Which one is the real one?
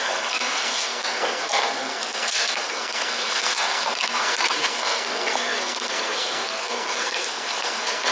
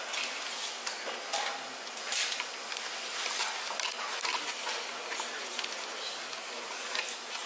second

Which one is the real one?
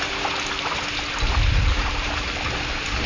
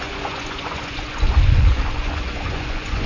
first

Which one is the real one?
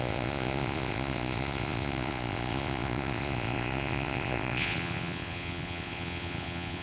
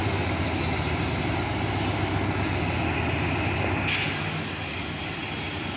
second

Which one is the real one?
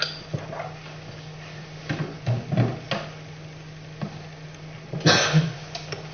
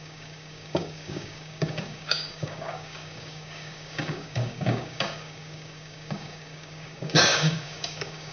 first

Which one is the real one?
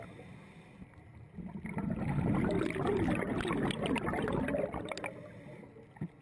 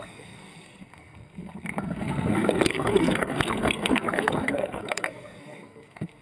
first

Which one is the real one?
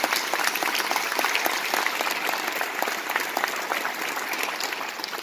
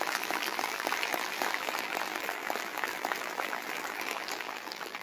first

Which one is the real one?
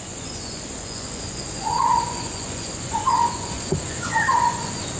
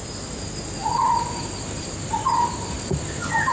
second